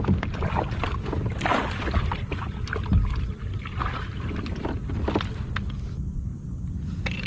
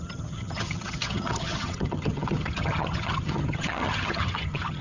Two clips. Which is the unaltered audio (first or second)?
first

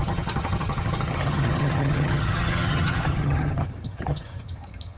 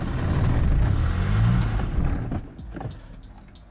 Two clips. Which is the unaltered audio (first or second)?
second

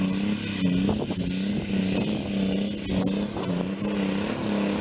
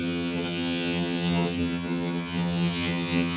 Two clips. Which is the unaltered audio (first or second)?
first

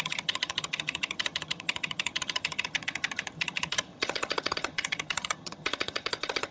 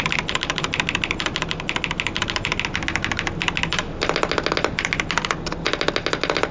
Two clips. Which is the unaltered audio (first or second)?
second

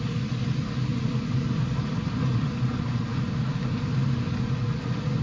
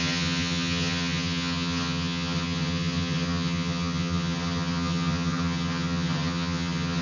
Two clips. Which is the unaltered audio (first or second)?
first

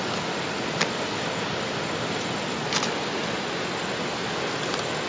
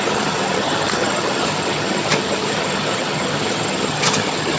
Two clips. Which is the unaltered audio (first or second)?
first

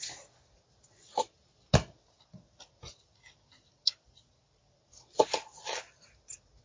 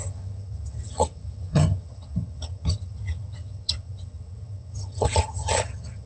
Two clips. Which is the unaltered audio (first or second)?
first